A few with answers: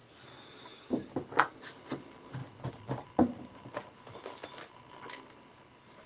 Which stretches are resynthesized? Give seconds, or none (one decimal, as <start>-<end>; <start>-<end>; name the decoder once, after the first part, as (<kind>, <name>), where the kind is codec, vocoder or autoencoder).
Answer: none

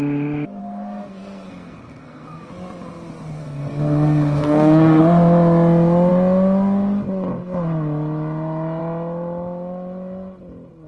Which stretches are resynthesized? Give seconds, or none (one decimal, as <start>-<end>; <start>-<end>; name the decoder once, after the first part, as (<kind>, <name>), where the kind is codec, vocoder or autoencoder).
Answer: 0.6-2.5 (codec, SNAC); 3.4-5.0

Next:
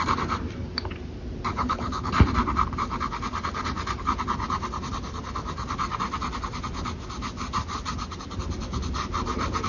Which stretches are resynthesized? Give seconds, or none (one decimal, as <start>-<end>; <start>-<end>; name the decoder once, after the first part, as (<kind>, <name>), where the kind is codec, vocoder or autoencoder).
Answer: 1.5-2.1 (codec, HILCodec)

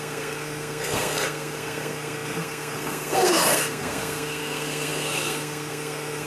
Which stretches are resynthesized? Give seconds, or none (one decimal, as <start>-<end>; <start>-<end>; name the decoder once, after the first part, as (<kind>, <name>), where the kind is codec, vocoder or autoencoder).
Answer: 0.0-6.3 (codec, SNAC)

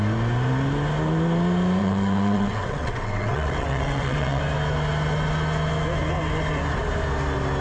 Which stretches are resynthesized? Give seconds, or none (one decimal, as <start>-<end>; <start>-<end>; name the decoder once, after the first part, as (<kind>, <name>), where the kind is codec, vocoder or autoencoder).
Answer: 1.8-4.4 (vocoder, WaveNeXt)

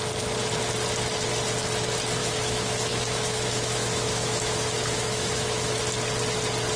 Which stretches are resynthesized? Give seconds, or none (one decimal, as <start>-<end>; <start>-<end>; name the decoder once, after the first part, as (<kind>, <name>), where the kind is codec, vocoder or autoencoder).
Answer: 2.2-5.8 (autoencoder, DAC-VAE)